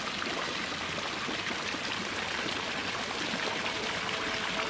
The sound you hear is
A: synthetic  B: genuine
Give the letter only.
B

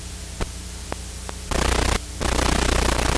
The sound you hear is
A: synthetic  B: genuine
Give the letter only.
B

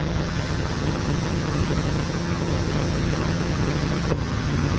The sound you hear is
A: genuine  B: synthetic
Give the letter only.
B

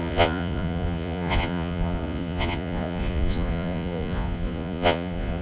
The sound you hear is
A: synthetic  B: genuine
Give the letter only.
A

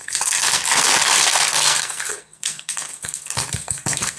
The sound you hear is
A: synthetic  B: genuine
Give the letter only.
A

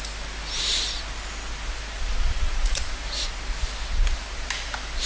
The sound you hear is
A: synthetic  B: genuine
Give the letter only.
B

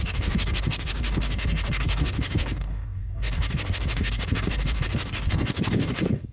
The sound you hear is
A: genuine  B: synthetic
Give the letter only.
B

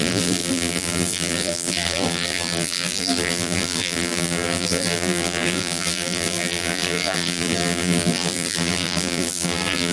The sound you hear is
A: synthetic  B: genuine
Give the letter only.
A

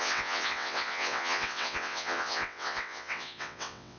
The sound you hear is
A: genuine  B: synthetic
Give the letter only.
B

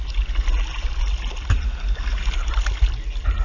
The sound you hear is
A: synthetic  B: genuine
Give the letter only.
B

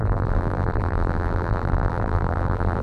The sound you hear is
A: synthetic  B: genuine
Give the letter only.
A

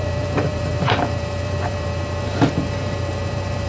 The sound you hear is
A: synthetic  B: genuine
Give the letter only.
A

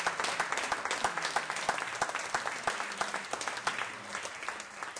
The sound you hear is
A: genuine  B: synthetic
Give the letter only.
A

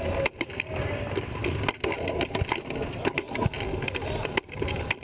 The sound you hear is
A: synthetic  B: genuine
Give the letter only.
B